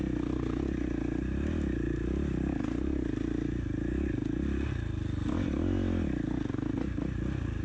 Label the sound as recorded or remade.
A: recorded